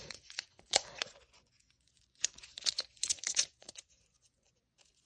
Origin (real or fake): fake